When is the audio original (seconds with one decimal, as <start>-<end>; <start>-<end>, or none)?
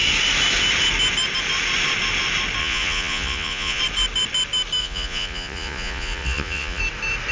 0.0-2.6; 3.8-4.8; 6.8-7.3